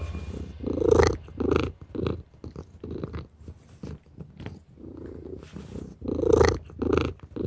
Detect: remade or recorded recorded